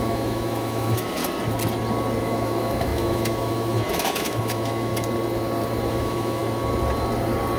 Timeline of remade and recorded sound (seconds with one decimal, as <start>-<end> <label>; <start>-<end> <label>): 0.0-1.2 remade; 1.2-2.2 recorded; 2.2-4.9 remade; 4.9-5.9 recorded; 5.9-6.4 remade; 6.4-7.6 recorded